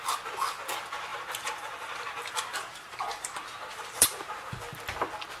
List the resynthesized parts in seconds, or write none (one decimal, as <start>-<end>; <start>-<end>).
1.1-4.3